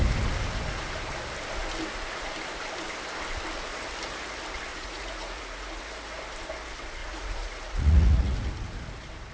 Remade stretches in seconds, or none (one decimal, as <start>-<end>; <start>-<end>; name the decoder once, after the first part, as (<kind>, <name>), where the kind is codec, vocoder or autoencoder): 4.7-5.8 (vocoder, Vocos); 7.0-8.5